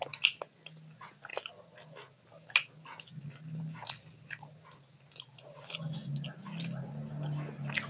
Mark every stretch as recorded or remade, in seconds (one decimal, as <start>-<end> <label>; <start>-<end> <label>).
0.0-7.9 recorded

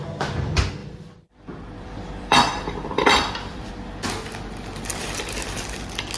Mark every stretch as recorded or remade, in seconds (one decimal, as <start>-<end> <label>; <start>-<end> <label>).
0.0-0.8 recorded; 0.8-3.7 remade; 3.7-4.9 recorded; 4.9-5.6 remade; 5.6-6.2 recorded

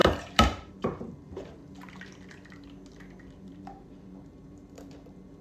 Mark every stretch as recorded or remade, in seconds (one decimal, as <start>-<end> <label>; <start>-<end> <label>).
0.0-1.6 remade; 1.6-3.2 recorded; 3.2-5.4 remade

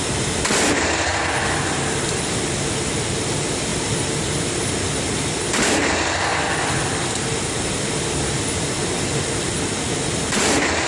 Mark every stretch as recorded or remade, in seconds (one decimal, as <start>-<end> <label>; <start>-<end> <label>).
0.0-1.1 remade; 1.1-1.6 recorded; 1.6-10.9 remade

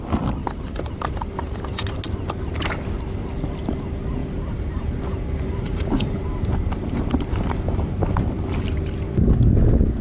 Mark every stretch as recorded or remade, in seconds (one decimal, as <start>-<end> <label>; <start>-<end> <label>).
0.0-0.4 recorded; 0.4-1.8 remade; 1.8-4.2 recorded; 4.2-7.0 remade; 7.0-10.0 recorded

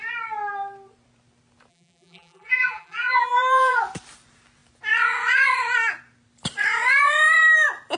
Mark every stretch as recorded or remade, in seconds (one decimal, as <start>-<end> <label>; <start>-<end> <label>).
0.0-1.7 recorded; 1.7-3.8 remade; 3.8-8.0 recorded